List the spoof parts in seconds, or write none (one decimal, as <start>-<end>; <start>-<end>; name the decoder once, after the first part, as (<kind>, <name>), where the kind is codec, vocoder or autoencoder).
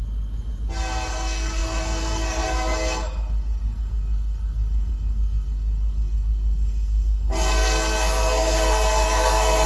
1.1-9.7 (codec, SNAC)